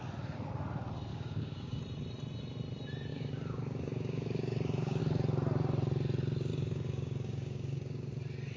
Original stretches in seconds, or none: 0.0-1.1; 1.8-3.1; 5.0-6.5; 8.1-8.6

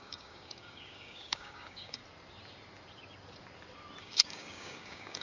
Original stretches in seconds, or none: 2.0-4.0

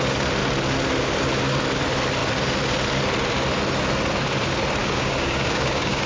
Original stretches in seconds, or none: 0.0-4.8

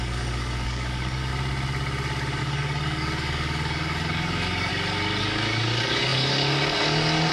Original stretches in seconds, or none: 1.3-2.4; 4.7-5.2